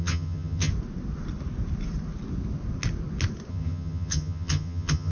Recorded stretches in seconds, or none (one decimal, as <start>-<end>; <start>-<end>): 0.7-3.5